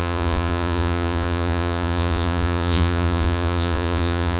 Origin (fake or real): fake